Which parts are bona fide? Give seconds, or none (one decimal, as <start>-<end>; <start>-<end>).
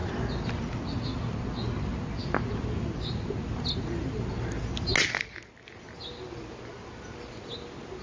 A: 0.0-8.0